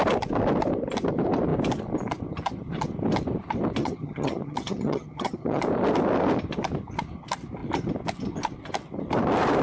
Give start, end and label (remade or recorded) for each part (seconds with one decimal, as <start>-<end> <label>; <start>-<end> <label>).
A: 0.0-3.8 recorded; 3.8-5.6 remade; 5.6-9.6 recorded